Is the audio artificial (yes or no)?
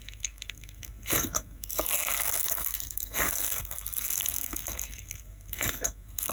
yes